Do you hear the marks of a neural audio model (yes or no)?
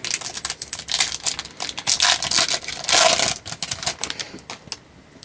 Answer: no